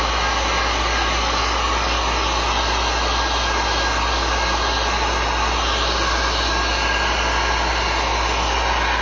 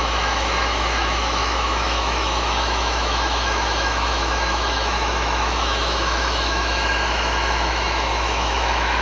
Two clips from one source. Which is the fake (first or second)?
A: second